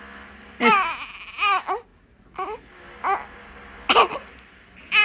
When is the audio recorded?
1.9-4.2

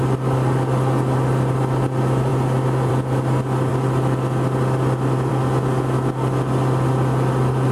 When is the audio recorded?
0.0-7.7

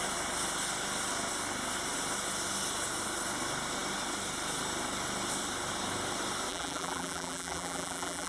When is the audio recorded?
0.0-6.5